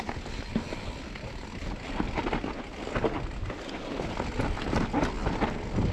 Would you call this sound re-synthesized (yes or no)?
no